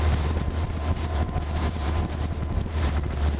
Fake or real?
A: fake